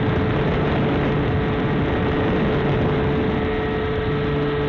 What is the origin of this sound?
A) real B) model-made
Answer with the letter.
A